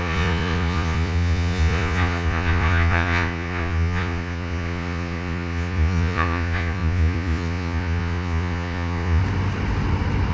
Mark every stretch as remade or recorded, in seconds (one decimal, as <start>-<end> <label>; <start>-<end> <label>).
0.0-9.2 remade; 9.2-10.3 recorded